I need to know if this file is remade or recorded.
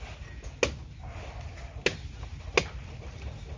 recorded